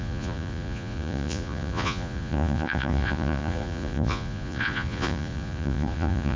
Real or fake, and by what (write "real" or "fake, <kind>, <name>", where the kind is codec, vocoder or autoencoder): fake, vocoder, Vocos